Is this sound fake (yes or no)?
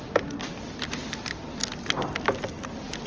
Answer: no